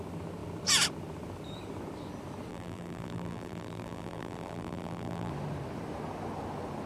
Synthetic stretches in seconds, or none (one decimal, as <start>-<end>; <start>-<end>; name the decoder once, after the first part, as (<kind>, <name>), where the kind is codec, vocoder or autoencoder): 2.5-5.3 (vocoder, BigVGAN v2)